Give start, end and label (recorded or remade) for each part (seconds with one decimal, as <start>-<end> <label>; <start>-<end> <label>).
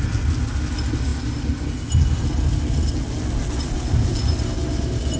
0.0-5.2 recorded